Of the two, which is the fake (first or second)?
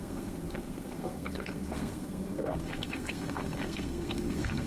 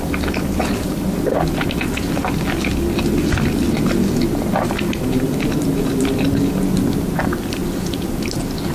first